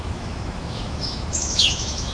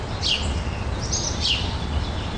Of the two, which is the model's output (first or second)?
first